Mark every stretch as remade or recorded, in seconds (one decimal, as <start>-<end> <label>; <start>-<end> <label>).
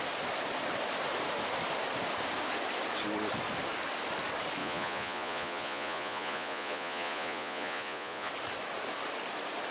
0.0-4.6 recorded; 4.6-8.3 remade; 8.3-9.7 recorded